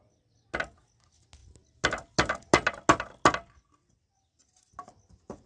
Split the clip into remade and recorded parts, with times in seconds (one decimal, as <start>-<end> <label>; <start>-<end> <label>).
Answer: 0.0-5.5 recorded